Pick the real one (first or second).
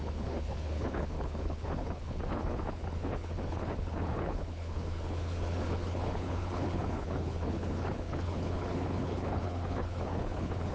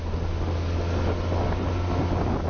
second